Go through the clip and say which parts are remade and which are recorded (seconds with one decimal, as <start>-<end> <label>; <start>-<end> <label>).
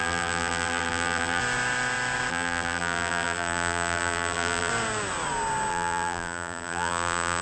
0.0-1.4 remade; 1.4-2.3 recorded; 2.3-4.7 remade; 4.7-5.7 recorded; 5.7-7.4 remade